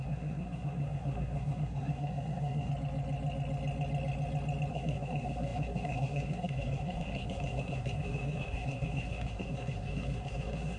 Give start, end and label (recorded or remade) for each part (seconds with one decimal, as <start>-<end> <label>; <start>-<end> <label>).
0.0-2.7 remade; 2.7-4.7 recorded; 4.7-10.8 remade